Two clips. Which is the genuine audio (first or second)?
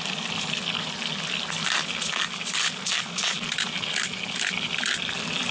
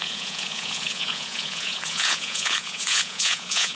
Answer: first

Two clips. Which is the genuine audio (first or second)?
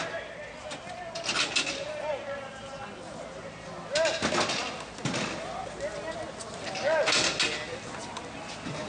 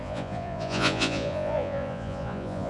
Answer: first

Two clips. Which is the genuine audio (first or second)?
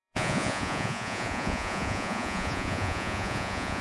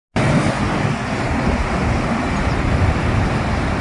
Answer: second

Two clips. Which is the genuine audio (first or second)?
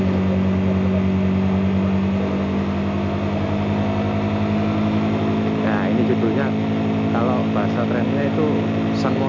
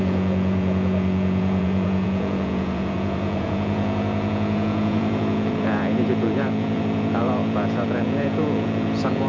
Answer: first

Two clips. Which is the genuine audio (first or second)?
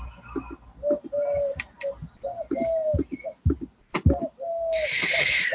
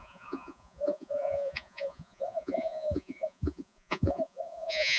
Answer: first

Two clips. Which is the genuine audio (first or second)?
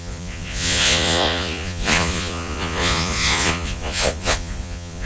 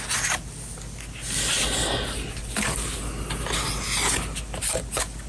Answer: second